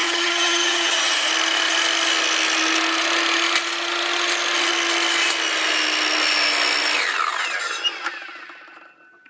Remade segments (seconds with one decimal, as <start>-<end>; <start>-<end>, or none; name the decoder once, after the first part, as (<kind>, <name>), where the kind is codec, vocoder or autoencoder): 0.0-1.3 (vocoder, HiFi-GAN)